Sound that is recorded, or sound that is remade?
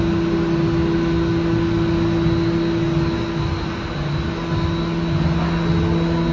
recorded